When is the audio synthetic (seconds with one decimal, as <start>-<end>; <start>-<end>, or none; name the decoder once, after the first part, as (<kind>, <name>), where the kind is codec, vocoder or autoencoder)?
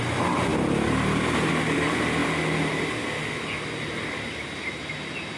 none